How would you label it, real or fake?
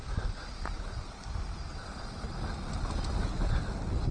real